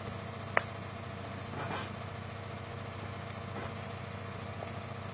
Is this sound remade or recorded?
recorded